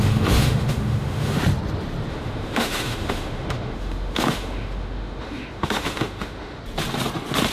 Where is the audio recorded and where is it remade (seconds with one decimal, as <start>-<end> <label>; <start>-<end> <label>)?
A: 0.0-1.4 remade; 1.4-2.1 recorded; 2.1-6.6 remade; 6.6-7.5 recorded